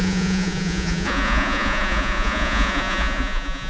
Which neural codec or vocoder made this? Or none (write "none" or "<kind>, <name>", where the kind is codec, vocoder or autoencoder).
vocoder, Vocos